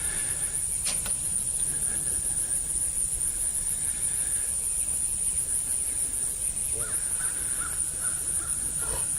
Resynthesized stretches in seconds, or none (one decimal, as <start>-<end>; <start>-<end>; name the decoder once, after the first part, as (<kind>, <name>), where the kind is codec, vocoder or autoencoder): none